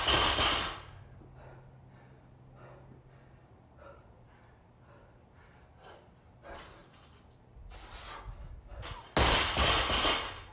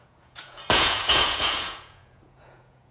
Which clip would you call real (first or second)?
first